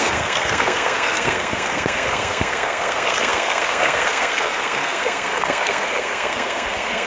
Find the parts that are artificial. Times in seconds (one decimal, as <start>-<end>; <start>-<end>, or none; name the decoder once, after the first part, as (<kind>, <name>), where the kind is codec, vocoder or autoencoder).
0.0-7.1 (codec, SNAC)